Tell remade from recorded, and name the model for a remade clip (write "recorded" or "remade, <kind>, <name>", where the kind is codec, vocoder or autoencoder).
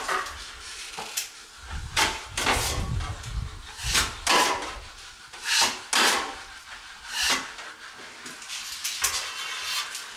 recorded